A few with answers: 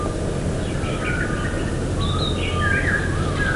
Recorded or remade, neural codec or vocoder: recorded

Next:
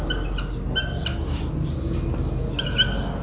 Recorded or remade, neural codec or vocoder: recorded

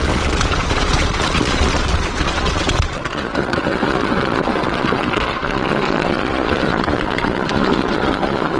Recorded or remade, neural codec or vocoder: remade, vocoder, Vocos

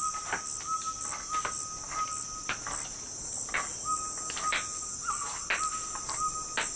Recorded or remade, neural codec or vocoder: recorded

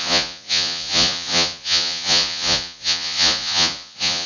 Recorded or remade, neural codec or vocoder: remade, vocoder, Vocos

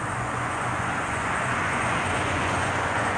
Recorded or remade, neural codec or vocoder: remade, vocoder, Vocos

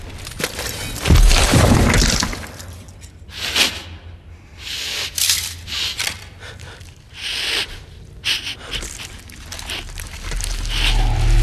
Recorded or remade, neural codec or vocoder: recorded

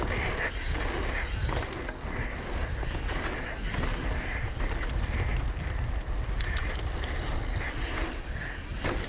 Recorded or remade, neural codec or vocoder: recorded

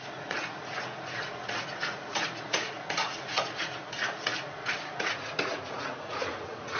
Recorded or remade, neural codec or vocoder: remade, vocoder, Vocos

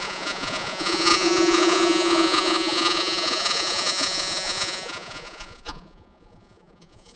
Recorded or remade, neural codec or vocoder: remade, vocoder, Vocos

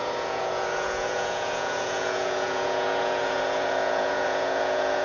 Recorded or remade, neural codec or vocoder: remade, vocoder, Vocos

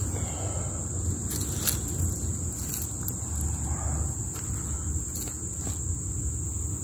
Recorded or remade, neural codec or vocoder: recorded